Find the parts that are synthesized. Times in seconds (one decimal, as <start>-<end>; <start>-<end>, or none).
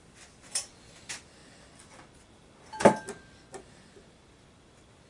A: none